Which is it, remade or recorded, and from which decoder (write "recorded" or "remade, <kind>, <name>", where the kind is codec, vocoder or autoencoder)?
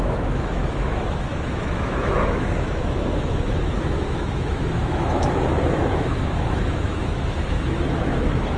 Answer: remade, autoencoder, DAC-VAE